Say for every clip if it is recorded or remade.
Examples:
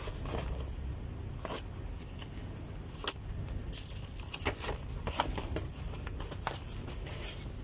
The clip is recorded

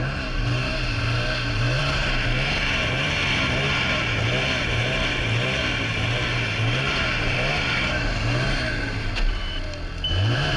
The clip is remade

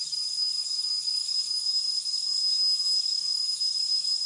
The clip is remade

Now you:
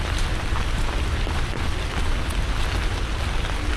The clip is recorded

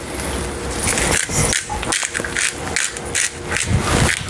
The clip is recorded